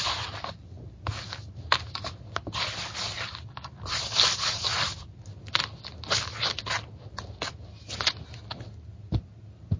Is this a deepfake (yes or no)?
no